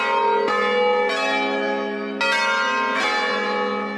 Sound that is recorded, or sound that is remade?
recorded